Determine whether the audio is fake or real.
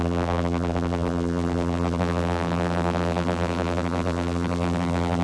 fake